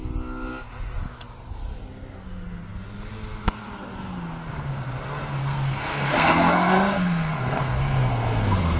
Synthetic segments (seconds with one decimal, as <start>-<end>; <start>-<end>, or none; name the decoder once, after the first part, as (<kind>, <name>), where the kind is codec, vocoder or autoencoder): 5.4-8.8 (codec, SNAC)